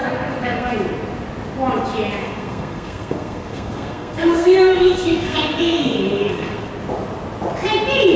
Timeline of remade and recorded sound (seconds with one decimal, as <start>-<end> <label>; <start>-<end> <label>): 0.0-0.7 remade; 0.7-2.2 recorded; 2.2-6.7 remade; 6.7-8.2 recorded